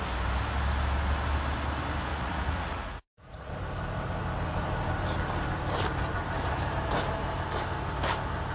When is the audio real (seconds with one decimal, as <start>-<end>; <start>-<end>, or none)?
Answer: 0.0-2.1; 3.5-8.5